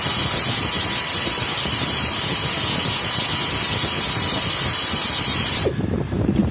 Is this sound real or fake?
real